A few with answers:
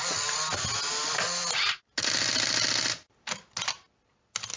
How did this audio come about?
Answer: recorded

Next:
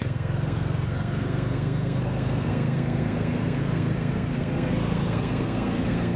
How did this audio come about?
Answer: remade